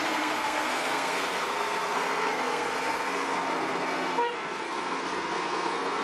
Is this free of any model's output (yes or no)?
no